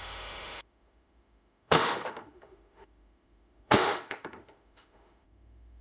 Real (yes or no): no